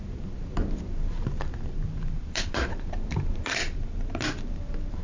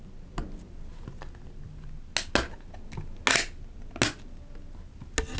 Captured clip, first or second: second